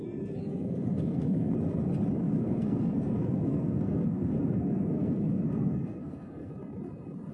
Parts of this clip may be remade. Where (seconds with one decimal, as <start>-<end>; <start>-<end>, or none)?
0.4-1.5; 2.2-6.5